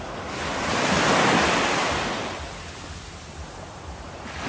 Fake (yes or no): no